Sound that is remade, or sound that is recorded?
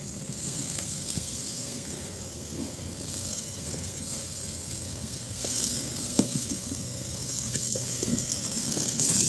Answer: remade